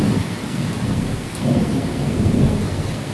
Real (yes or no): no